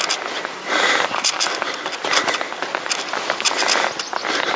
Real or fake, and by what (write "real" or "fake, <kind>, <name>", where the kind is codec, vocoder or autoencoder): real